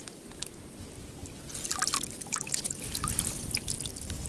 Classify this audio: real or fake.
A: real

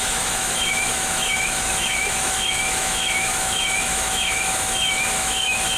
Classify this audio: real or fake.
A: fake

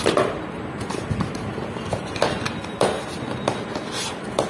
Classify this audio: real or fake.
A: real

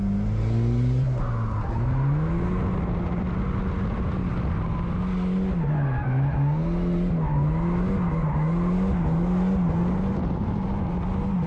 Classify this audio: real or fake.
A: real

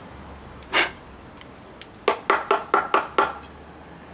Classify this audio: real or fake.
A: real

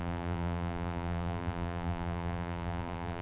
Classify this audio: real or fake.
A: fake